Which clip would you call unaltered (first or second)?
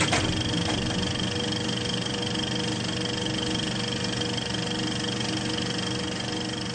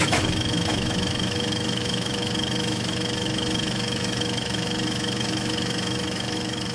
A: first